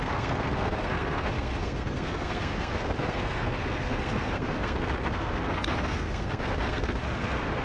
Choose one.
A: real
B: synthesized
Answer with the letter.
B